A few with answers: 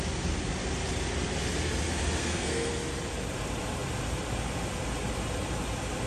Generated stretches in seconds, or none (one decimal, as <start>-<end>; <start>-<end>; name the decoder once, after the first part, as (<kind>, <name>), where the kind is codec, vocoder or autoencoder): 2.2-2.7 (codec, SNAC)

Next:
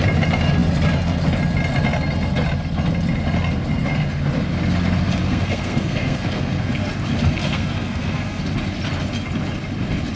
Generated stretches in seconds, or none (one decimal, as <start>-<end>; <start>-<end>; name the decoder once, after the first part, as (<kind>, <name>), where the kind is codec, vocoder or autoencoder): 5.2-6.7 (codec, SNAC); 7.4-8.4

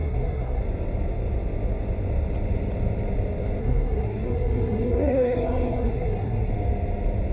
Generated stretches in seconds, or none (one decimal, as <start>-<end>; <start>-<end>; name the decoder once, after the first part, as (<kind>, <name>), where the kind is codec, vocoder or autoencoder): 0.0-0.6 (codec, SNAC); 3.6-6.5

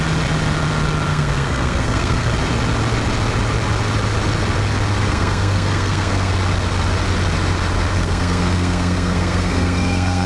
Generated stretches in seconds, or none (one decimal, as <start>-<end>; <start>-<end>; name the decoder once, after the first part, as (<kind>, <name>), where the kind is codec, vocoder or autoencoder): 1.1-2.3 (codec, SNAC); 5.0-6.3; 7.9-10.3

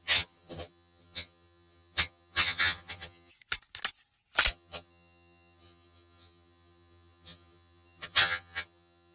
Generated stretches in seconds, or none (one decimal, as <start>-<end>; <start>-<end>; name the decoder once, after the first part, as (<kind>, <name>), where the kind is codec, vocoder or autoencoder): 0.0-3.3 (vocoder, HiFi-GAN); 4.5-9.1

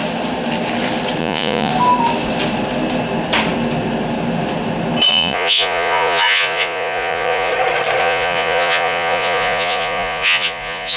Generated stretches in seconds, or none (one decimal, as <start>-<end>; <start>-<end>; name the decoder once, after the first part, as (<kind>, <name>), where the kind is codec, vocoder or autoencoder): 1.2-1.7 (vocoder, Vocos); 5.1-7.5; 8.0-11.0

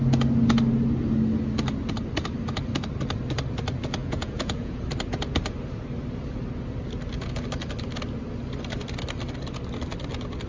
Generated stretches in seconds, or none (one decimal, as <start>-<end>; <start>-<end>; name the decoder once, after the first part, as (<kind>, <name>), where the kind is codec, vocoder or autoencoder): 4.0-4.8 (vocoder, Vocos)

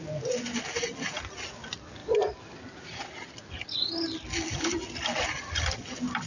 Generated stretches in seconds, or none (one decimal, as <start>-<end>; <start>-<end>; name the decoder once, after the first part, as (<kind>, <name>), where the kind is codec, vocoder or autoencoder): 2.0-5.8 (vocoder, BigVGAN v2)